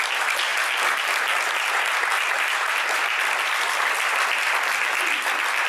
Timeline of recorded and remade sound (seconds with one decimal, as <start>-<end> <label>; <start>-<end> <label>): 0.0-5.7 recorded